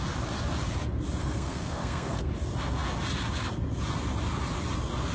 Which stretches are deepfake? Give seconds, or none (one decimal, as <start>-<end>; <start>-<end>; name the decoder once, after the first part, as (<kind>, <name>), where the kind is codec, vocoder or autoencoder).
1.2-2.3 (codec, SNAC)